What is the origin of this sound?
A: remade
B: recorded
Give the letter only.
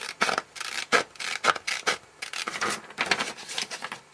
B